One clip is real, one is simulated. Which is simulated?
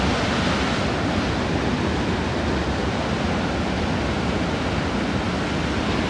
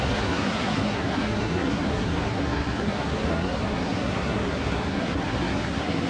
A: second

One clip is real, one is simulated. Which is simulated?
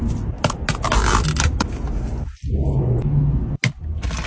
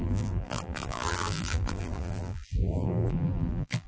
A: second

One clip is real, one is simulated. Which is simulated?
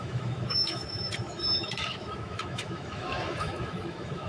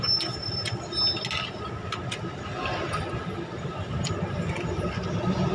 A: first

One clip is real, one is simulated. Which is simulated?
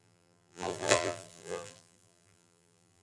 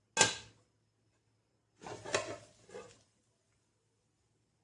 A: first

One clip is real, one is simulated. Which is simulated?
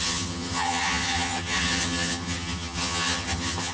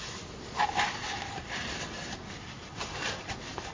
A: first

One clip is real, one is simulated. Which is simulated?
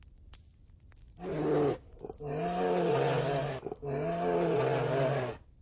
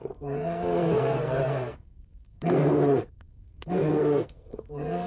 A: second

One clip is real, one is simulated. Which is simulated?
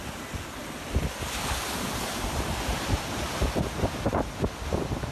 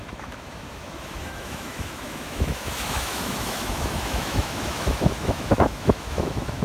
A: second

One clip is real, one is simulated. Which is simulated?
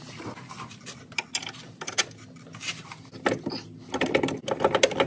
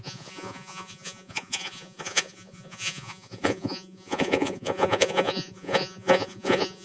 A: second